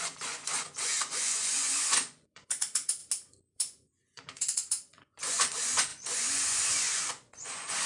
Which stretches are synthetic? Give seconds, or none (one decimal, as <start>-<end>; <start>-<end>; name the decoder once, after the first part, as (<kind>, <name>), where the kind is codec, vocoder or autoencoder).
0.0-3.0 (vocoder, Vocos); 3.5-7.9